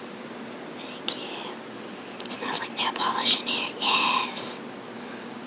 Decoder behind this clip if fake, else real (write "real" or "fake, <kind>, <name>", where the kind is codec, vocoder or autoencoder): real